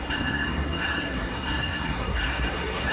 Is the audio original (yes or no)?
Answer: no